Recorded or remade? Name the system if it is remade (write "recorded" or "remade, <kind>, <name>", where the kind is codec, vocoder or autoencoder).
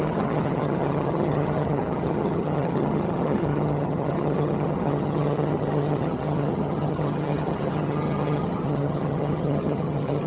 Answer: remade, vocoder, HiFi-GAN